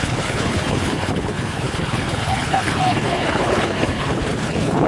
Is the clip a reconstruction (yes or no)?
yes